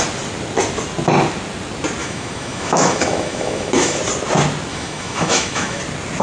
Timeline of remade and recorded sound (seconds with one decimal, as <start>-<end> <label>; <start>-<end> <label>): 0.0-2.0 recorded; 2.0-4.0 remade; 4.0-4.7 recorded; 4.7-5.8 remade; 5.8-6.2 recorded